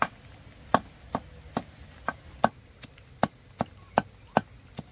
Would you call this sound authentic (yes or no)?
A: yes